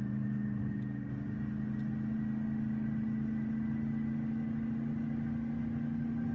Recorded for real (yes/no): yes